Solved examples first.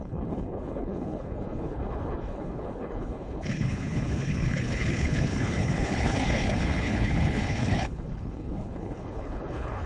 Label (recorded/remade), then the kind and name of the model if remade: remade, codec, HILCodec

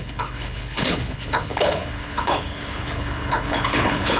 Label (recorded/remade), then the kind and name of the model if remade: remade, codec, HILCodec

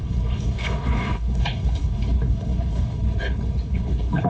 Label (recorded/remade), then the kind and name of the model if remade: remade, codec, HILCodec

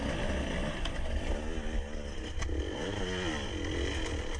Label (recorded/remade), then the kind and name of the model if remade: recorded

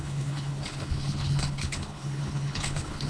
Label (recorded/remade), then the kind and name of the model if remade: remade, codec, HILCodec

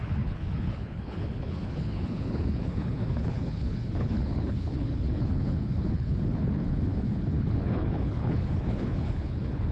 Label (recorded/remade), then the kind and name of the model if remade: remade, codec, HILCodec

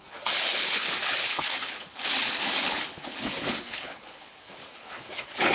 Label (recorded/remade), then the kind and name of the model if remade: remade, codec, HILCodec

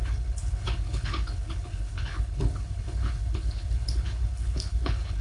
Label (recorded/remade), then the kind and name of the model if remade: remade, codec, HILCodec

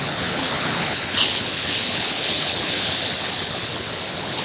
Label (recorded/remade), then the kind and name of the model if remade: remade, codec, HILCodec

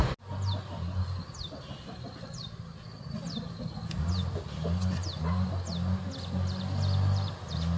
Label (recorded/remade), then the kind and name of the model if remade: recorded